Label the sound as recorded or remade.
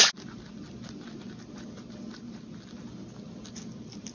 recorded